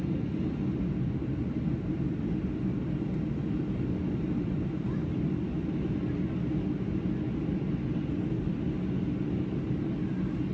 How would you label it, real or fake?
real